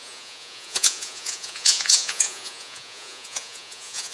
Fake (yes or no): yes